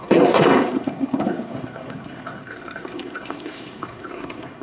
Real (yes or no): no